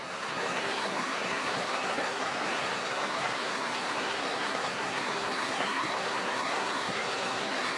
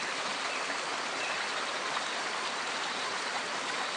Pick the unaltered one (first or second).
second